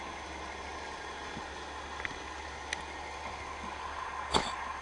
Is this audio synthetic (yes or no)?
no